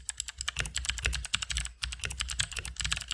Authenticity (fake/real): real